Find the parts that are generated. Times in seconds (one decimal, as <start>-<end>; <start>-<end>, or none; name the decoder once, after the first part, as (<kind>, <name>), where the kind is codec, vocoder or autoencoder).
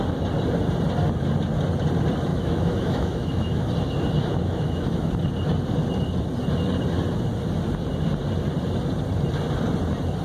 2.3-3.7 (autoencoder, DAC-VAE); 4.3-5.1